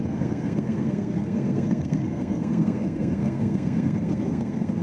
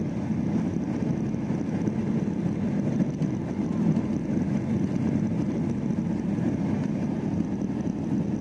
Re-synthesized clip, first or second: first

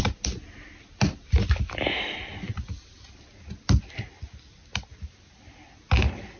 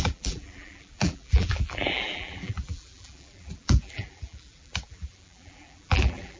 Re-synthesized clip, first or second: second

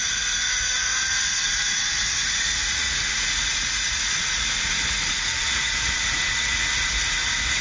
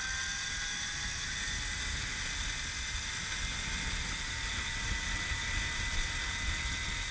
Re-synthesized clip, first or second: first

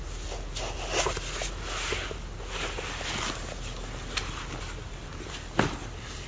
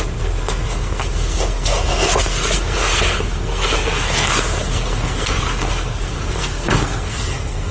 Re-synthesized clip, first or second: second